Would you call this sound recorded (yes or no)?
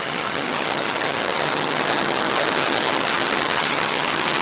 no